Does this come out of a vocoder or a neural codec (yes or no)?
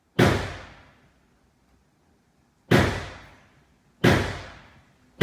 no